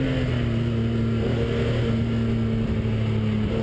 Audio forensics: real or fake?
real